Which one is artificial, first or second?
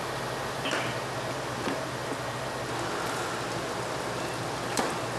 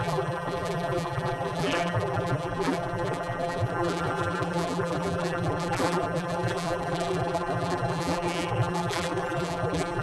second